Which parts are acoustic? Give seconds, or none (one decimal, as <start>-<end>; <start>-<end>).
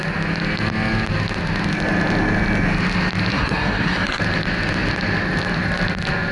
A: 0.0-3.3; 4.2-6.3